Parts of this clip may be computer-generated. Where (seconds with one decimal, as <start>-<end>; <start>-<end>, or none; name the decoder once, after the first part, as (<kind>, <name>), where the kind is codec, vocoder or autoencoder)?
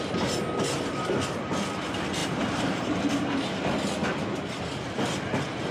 2.2-3.1 (vocoder, BigVGAN v2)